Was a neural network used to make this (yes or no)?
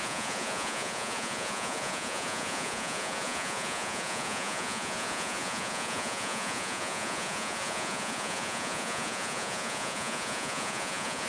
yes